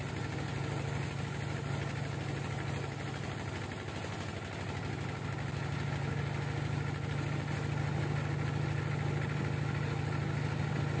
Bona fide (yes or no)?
yes